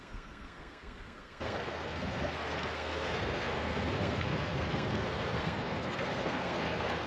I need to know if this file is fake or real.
fake